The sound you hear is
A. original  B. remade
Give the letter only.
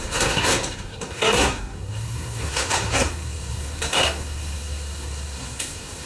B